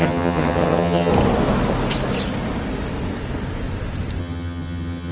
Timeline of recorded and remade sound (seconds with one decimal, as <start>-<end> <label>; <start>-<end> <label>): 0.0-1.1 remade; 1.1-4.2 recorded; 4.2-5.1 remade